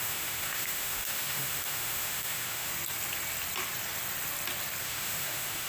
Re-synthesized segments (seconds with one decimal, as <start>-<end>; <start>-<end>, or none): 0.0-2.7; 4.8-5.7